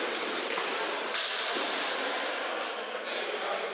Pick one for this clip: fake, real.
real